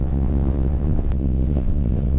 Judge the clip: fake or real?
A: fake